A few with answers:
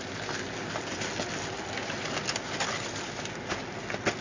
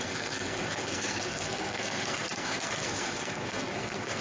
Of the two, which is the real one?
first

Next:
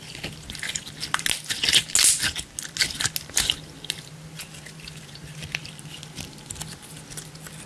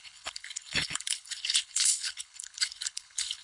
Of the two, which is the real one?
first